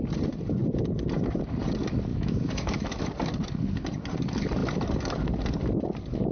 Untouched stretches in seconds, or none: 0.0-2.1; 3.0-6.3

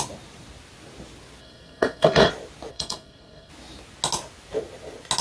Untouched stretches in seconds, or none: 0.0-1.4; 2.3-2.7; 3.5-5.2

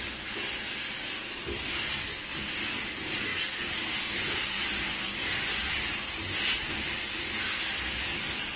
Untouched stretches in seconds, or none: 0.0-8.6